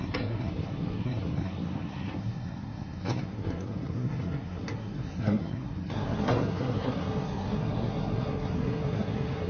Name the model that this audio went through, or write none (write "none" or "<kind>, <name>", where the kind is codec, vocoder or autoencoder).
codec, SNAC